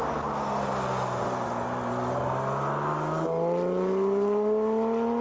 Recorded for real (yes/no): yes